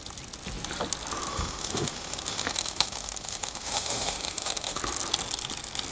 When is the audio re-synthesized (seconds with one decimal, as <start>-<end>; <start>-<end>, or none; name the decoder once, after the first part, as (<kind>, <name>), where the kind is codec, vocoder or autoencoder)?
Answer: 1.3-4.8 (autoencoder, DAC-VAE)